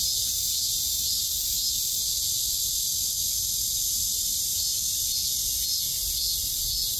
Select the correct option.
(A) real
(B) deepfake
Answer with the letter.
A